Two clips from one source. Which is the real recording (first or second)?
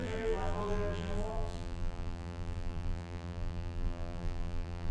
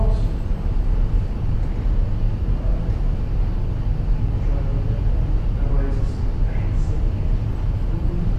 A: second